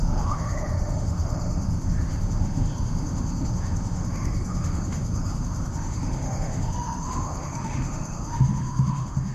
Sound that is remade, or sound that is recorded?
remade